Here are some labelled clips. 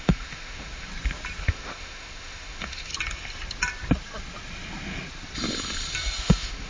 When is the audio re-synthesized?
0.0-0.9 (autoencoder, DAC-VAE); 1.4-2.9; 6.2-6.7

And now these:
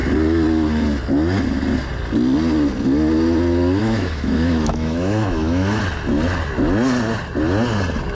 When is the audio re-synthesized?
3.8-5.8 (autoencoder, DAC-VAE)

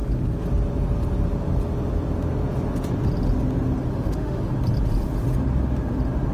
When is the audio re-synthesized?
3.9-4.5 (autoencoder, DAC-VAE)

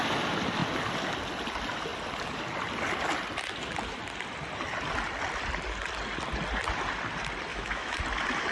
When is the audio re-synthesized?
7.5-8.0 (autoencoder, DAC-VAE)

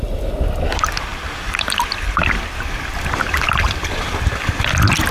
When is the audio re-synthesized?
none